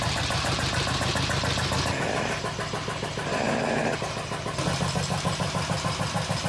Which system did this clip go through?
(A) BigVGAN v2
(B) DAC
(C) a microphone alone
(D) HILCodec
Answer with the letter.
C